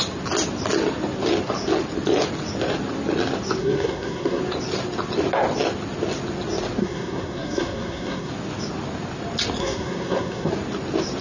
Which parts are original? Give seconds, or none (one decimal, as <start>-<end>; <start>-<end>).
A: 0.0-3.6; 4.4-6.8; 8.3-9.6; 10.5-11.2